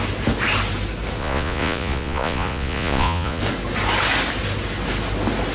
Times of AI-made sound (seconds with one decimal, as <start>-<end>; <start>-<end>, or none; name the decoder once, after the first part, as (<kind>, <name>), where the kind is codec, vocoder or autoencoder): 1.2-3.4 (vocoder, Vocos)